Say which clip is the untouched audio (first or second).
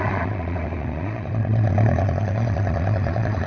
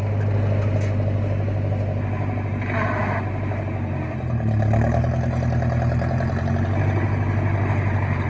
second